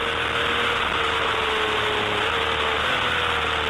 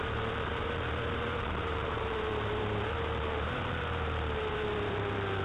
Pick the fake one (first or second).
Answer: second